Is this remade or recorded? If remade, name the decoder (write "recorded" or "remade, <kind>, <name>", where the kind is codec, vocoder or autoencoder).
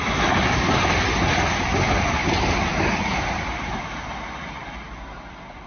recorded